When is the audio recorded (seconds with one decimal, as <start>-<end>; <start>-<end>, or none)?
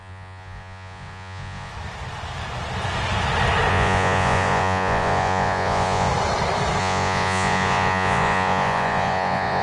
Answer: 1.7-3.7; 6.1-6.8